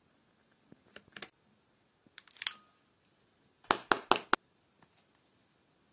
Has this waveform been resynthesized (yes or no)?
no